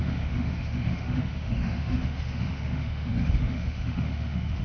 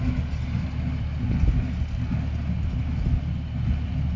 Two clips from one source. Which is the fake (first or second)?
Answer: first